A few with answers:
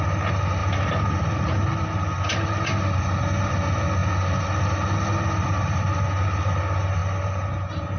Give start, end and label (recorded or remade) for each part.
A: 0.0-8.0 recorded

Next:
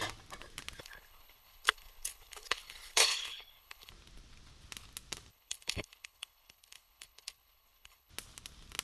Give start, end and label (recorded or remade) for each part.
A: 0.0-0.8 recorded; 0.8-3.9 remade; 3.9-5.3 recorded; 5.3-8.1 remade; 8.1-8.8 recorded

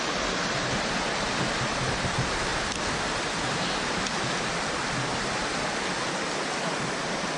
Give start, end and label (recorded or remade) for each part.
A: 0.0-7.4 recorded

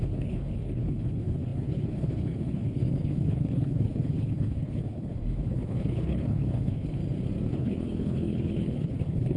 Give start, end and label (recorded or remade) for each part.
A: 0.0-7.0 remade; 7.0-7.5 recorded; 7.5-9.4 remade

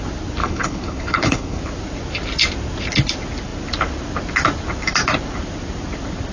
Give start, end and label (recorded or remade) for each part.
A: 0.0-0.4 recorded; 0.4-1.6 remade; 1.6-6.3 recorded